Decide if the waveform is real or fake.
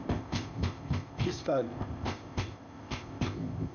fake